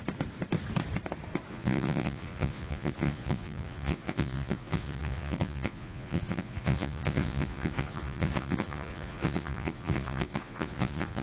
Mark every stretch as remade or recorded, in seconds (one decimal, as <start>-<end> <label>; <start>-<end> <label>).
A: 0.0-1.5 recorded; 1.5-11.2 remade